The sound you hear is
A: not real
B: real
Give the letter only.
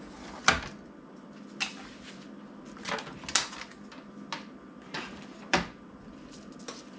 B